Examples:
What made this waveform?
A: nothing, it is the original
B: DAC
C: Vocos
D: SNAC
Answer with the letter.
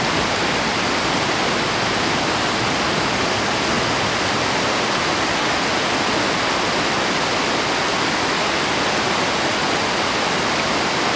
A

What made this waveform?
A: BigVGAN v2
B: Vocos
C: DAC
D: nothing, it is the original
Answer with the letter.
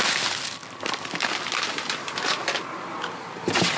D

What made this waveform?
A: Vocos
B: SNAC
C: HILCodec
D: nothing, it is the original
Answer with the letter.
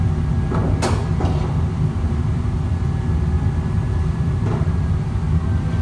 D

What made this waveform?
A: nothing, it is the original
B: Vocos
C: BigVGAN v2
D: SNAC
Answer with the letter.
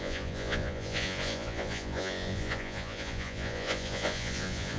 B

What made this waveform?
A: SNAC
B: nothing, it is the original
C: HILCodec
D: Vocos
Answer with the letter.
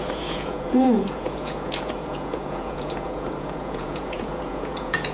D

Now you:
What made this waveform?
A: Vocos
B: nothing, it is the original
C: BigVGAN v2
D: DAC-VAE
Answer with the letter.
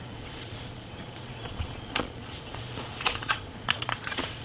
A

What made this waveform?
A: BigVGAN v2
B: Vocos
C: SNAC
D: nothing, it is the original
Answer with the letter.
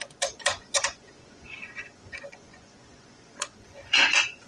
B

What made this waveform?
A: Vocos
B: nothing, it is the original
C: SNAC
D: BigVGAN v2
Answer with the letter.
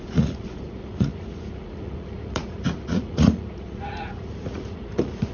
A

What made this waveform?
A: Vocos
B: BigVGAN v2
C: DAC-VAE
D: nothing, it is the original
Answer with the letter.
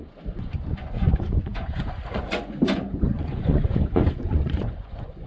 A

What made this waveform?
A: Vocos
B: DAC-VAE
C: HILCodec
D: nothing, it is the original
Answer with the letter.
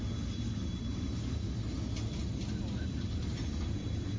D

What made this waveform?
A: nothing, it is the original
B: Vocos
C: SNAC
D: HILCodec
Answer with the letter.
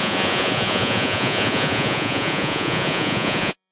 B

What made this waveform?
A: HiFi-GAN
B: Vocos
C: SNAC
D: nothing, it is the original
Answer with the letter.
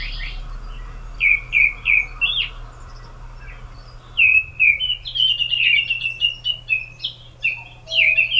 D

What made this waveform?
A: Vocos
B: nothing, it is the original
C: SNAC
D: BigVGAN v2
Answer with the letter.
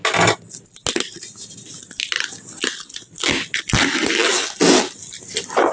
B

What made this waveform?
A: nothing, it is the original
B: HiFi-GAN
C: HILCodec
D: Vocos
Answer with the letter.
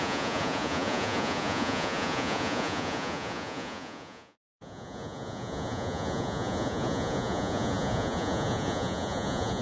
D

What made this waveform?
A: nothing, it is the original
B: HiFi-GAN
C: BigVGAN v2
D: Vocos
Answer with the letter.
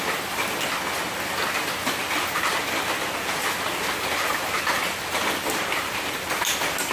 A